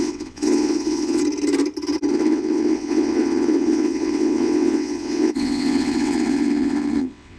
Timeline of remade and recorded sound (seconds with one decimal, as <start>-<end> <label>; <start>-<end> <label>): 0.0-1.2 remade; 1.2-2.1 recorded; 2.1-7.4 remade